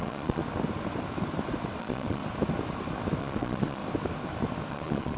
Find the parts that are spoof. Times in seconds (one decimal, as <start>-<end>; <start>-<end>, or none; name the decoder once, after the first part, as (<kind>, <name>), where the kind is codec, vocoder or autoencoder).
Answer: 0.0-0.4 (vocoder, Vocos); 1.8-2.2; 3.2-3.8; 4.7-5.2